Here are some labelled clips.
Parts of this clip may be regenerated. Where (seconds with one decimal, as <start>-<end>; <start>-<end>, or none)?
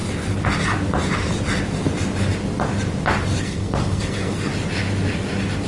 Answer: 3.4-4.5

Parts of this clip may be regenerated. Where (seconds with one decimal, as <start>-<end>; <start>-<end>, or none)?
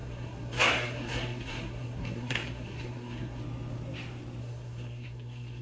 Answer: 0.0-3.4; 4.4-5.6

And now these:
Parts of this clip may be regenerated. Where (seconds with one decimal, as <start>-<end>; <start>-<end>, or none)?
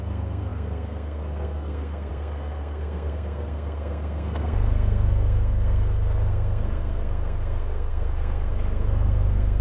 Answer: 0.0-9.6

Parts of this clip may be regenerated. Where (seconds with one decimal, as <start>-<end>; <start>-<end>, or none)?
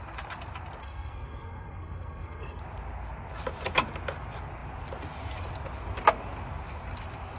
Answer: 0.8-2.6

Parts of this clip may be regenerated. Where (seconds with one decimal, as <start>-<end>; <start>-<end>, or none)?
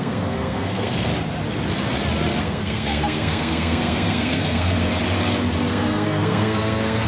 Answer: 0.0-1.1; 2.4-4.9; 5.7-7.1